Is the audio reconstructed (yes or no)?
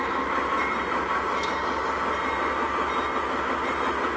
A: no